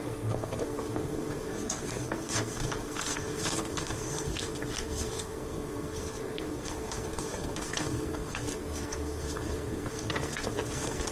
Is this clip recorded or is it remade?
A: remade